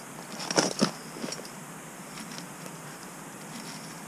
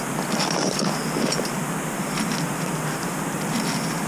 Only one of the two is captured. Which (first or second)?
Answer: second